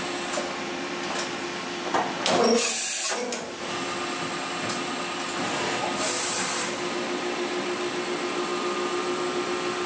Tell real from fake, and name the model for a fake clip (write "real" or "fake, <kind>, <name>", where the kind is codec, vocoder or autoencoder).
real